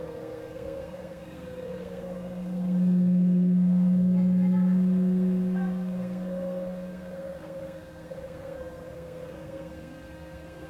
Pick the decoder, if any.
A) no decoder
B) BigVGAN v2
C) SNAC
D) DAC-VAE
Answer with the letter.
C